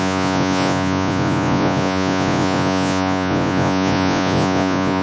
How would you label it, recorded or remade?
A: remade